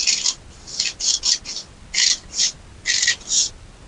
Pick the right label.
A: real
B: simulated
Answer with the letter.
A